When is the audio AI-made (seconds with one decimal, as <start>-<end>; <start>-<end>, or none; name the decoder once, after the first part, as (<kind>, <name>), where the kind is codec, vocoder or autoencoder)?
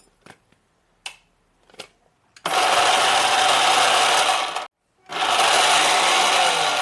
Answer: none